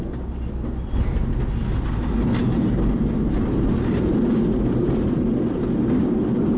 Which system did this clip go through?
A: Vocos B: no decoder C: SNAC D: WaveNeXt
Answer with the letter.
B